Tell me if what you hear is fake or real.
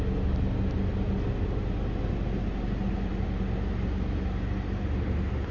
real